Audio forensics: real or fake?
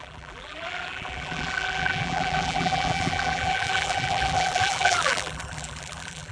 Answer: fake